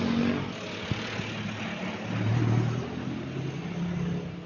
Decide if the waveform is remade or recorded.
recorded